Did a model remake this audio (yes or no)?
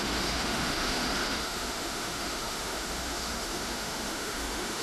yes